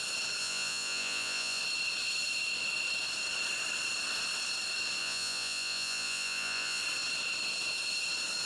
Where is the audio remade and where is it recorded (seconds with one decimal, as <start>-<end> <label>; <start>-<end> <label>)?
0.0-0.4 recorded; 0.4-1.6 remade; 1.6-5.0 recorded; 5.0-6.8 remade; 6.8-8.5 recorded